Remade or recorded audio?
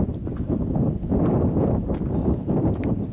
recorded